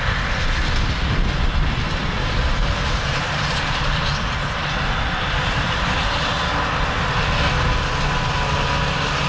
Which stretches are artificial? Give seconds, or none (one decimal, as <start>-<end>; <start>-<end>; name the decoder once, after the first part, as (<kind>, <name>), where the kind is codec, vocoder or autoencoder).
2.0-6.5 (vocoder, BigVGAN v2)